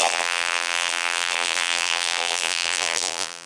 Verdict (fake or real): fake